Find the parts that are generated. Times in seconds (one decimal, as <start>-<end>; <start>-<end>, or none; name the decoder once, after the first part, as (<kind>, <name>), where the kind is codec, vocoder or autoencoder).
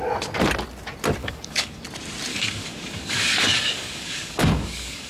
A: 1.2-1.8 (codec, DAC); 2.3-5.1